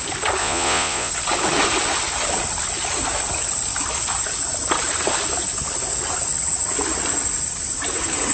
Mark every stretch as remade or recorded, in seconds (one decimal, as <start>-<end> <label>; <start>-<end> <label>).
0.0-0.4 recorded; 0.4-1.1 remade; 1.1-8.3 recorded